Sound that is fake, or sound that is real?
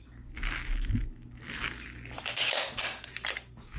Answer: real